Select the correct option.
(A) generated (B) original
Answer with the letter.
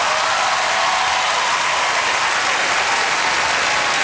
B